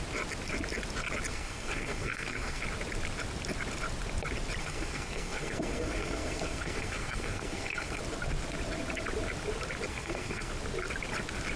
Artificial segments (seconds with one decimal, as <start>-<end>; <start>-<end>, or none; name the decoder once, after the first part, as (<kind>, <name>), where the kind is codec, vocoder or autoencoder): 1.3-2.6 (codec, SNAC); 4.6-8.0; 9.9-10.5